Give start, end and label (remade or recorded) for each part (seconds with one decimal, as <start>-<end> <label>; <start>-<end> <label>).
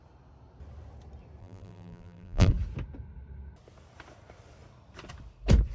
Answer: 0.0-1.4 recorded; 1.4-2.5 remade; 2.5-5.7 recorded